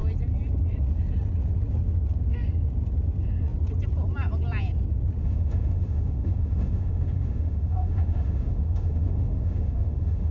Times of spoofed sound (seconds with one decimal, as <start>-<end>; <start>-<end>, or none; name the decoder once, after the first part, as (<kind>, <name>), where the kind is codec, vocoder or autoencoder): 5.2-10.3 (autoencoder, DAC-VAE)